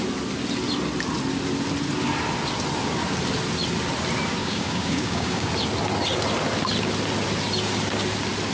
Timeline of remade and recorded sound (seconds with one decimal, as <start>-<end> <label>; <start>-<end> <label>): 0.0-4.4 recorded; 4.4-5.5 remade; 5.5-8.5 recorded